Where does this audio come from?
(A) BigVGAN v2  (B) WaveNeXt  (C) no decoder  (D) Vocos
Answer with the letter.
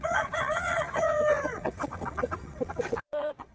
B